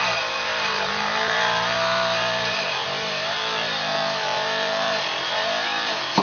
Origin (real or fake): fake